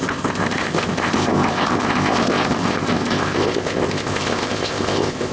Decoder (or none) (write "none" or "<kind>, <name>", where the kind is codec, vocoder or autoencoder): codec, ZipCodec